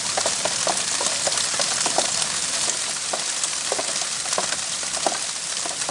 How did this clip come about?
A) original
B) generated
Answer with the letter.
A